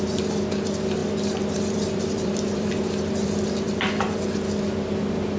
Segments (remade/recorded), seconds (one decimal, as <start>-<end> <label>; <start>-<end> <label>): 0.0-1.0 recorded; 1.0-4.2 remade; 4.2-5.4 recorded